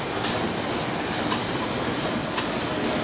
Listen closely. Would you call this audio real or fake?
real